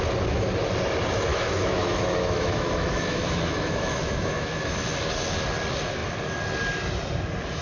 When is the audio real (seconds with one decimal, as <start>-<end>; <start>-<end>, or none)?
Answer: 0.0-1.3; 4.7-7.6